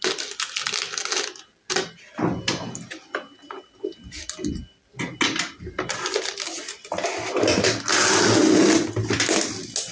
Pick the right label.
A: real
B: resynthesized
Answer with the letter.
A